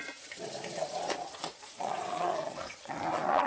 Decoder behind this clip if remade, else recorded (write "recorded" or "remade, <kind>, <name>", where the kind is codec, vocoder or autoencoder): remade, vocoder, Vocos